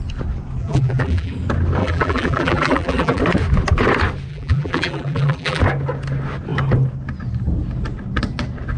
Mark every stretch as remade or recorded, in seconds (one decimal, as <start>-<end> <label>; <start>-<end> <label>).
0.0-0.6 recorded; 0.6-1.3 remade; 1.3-1.8 recorded; 1.8-3.2 remade; 3.2-4.3 recorded; 4.3-5.6 remade; 5.6-8.8 recorded